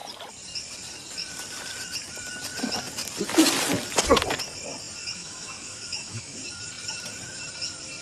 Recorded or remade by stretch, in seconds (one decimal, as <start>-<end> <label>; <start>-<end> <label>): 0.0-5.0 recorded; 5.0-6.4 remade; 6.4-8.0 recorded